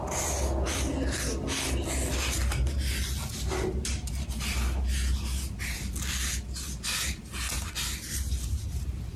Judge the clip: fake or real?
real